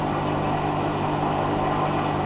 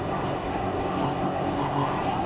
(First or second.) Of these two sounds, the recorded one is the first